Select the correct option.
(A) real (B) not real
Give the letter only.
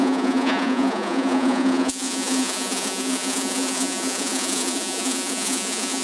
B